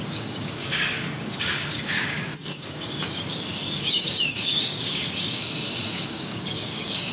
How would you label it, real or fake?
fake